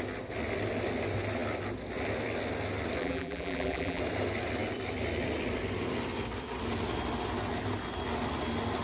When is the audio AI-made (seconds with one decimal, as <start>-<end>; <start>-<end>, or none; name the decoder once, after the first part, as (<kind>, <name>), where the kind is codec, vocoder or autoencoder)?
3.0-4.0 (vocoder, BigVGAN v2)